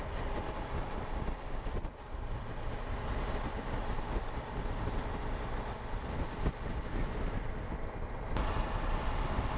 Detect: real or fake real